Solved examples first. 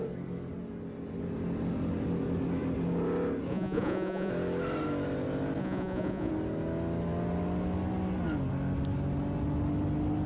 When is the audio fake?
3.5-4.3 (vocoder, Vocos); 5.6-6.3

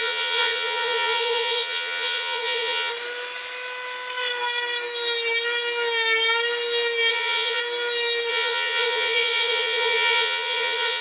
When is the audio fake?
0.0-2.9 (vocoder, Vocos); 7.1-7.6; 8.3-11.0

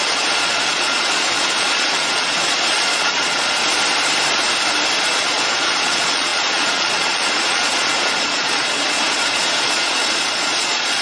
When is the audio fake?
0.0-3.6 (vocoder, Vocos); 5.0-11.0

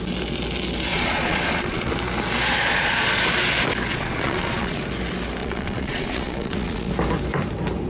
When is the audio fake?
0.9-1.9 (vocoder, Vocos); 2.5-3.2; 3.9-4.8; 5.4-6.9

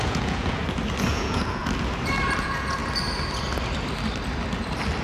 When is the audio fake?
0.0-0.6 (vocoder, Vocos); 1.1-1.6; 2.4-2.8

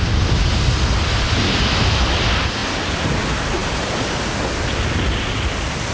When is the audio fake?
none